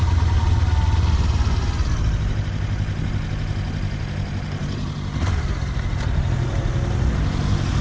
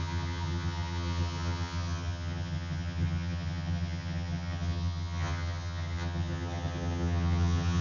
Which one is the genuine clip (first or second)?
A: first